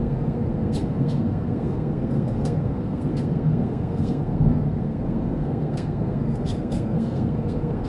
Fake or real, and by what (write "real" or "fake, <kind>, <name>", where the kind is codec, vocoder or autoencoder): fake, codec, SNAC